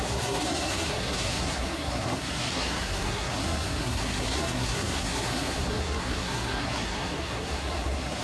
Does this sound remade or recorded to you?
remade